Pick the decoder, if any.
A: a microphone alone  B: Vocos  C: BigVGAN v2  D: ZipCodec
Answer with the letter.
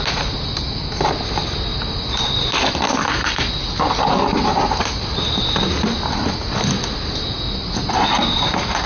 A